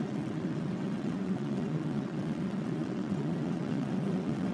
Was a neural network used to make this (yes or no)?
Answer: yes